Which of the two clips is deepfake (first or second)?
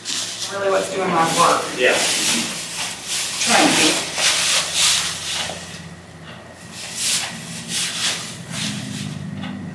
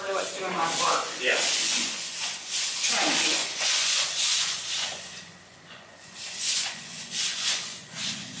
second